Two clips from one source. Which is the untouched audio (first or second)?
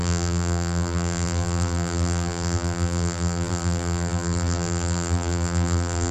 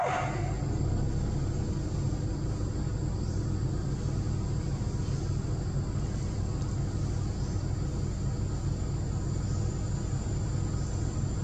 second